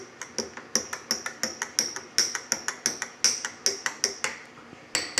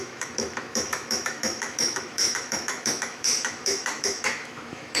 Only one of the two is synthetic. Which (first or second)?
second